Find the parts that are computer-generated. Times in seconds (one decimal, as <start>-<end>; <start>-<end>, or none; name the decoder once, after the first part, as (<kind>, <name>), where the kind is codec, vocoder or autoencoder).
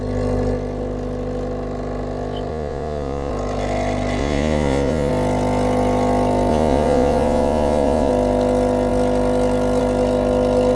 2.5-3.3 (vocoder, Vocos); 4.2-5.1; 6.5-8.1